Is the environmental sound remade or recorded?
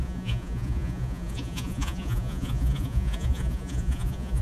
remade